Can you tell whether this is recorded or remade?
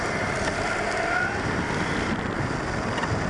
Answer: recorded